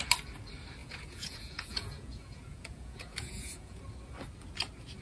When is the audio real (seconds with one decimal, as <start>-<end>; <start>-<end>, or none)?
0.0-0.8; 3.8-5.0